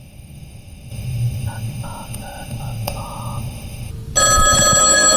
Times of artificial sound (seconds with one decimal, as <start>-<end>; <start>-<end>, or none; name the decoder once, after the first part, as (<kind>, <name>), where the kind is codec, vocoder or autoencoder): 0.0-3.9 (autoencoder, DAC-VAE); 4.8-5.2